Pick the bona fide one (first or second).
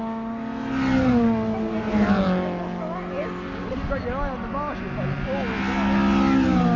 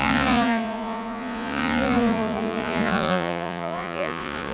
first